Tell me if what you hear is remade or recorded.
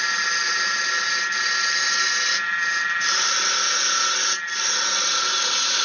recorded